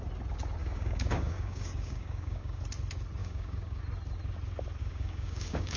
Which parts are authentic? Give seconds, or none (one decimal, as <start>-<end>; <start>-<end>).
0.0-0.6; 2.6-3.2; 3.8-4.8